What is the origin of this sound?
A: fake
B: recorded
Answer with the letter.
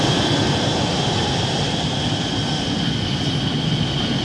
A